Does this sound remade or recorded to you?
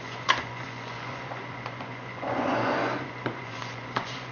remade